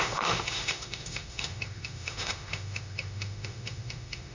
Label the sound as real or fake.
fake